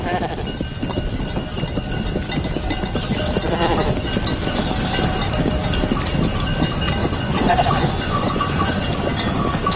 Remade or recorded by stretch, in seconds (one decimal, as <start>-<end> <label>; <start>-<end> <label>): 0.0-7.0 recorded; 7.0-8.9 remade; 8.9-9.8 recorded